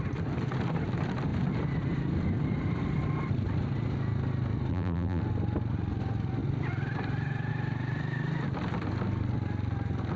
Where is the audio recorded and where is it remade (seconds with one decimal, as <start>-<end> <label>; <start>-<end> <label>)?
0.0-4.7 recorded; 4.7-5.2 remade; 5.2-10.2 recorded